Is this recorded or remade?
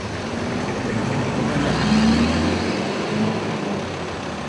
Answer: recorded